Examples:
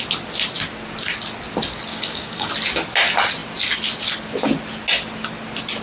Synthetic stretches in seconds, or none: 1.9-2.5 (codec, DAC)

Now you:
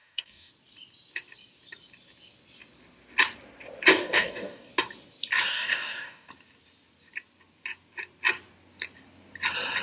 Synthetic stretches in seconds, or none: 0.0-0.5 (codec, DAC); 3.9-4.7; 5.5-6.3

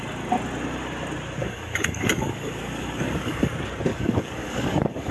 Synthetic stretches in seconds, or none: 1.4-3.5 (codec, DAC); 3.9-5.1

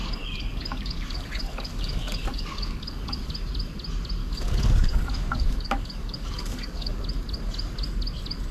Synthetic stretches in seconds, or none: 0.0-3.3 (codec, DAC); 4.2-7.0

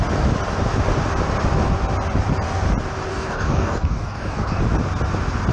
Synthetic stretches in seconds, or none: 3.1-4.6 (codec, DAC)

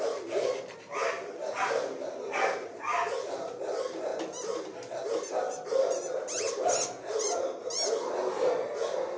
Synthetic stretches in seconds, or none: none

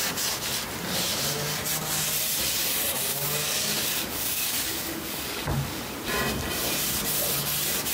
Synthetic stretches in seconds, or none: 3.1-5.8 (codec, DAC)